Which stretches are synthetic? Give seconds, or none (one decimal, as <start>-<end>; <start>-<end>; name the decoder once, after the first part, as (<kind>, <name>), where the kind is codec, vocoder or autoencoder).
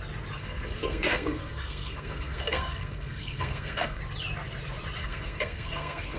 0.4-4.0 (codec, SNAC); 5.0-6.2